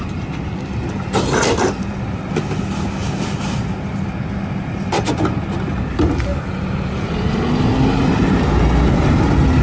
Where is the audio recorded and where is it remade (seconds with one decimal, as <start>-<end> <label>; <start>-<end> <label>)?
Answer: 0.0-9.6 recorded